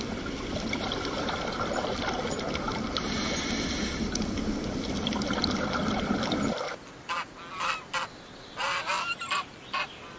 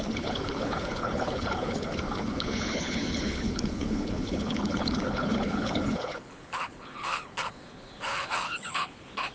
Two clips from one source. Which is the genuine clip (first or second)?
first